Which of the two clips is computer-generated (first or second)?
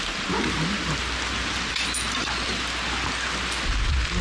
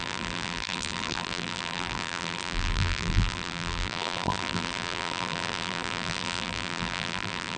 second